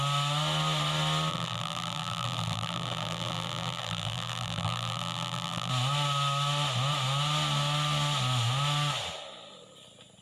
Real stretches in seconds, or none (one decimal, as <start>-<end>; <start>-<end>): 0.0-1.3; 5.7-10.2